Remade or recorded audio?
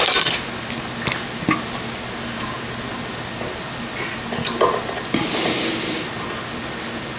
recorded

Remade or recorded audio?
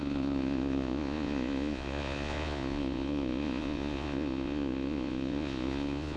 remade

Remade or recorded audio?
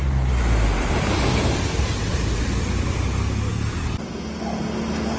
recorded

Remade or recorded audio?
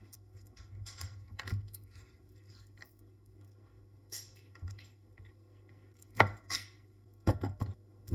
remade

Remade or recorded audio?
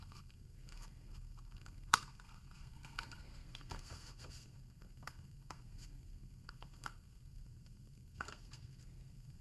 remade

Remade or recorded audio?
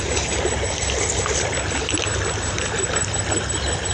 recorded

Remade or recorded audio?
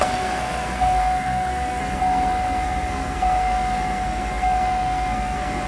remade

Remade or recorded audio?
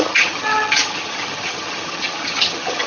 remade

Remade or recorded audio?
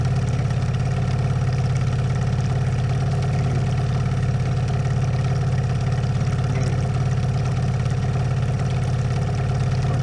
recorded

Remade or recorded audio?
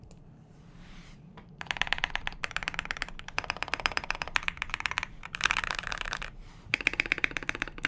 remade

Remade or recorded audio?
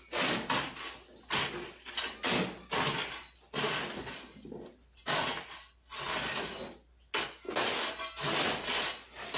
recorded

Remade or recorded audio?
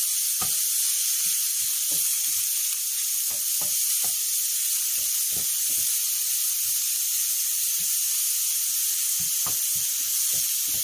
recorded